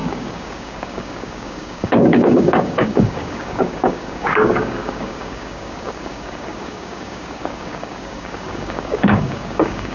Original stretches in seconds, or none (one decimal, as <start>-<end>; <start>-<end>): none